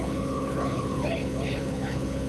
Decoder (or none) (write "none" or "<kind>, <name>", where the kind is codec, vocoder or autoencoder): codec, HILCodec